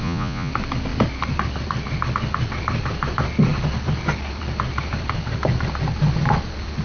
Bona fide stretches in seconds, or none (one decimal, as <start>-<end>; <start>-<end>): 0.5-6.8